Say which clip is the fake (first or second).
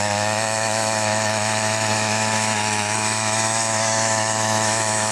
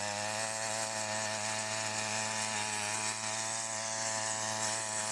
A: first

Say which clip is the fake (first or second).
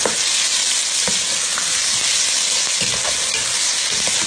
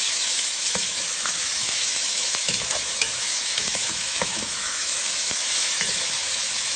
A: second